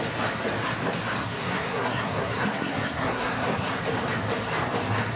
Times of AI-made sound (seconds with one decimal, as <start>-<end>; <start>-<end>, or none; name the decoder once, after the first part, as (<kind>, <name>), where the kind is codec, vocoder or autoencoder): 1.2-3.8 (codec, SNAC)